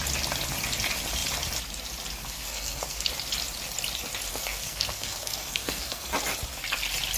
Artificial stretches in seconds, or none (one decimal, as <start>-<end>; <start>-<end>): 2.2-3.1; 4.3-6.1